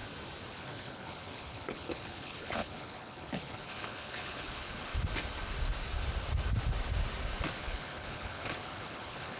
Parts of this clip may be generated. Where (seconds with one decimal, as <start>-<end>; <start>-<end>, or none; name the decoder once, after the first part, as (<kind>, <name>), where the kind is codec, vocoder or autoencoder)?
0.5-4.9 (codec, HILCodec); 7.6-9.4